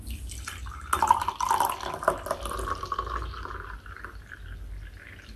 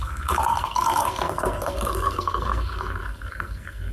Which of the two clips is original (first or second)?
first